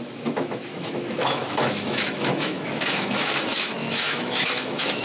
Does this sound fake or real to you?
fake